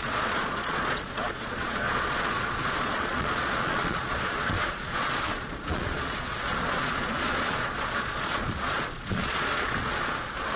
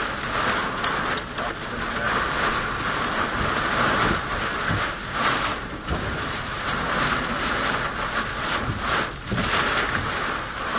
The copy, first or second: first